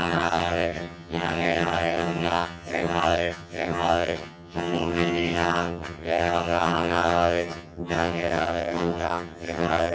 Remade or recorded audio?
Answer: remade